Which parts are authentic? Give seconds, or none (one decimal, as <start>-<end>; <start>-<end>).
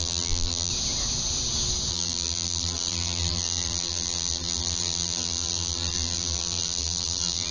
0.7-1.9